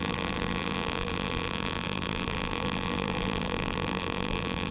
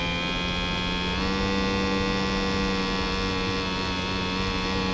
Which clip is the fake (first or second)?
first